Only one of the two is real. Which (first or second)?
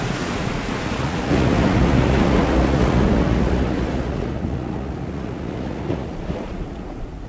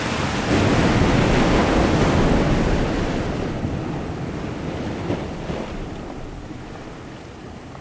second